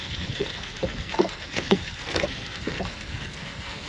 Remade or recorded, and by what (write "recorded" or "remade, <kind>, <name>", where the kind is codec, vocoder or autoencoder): remade, codec, SNAC